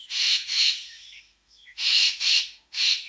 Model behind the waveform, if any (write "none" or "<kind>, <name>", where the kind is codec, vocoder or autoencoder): autoencoder, DAC-VAE